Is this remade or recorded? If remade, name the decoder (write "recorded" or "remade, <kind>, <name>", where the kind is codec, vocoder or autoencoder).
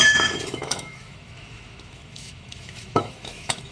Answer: remade, autoencoder, DAC-VAE